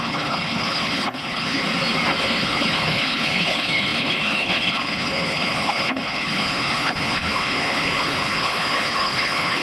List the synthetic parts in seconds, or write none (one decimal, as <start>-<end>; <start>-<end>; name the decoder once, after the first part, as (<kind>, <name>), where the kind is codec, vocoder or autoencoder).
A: 0.0-1.6 (codec, HILCodec); 2.2-9.6